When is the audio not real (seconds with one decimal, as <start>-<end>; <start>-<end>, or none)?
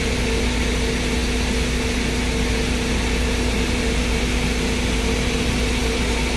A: none